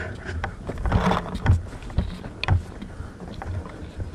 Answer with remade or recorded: recorded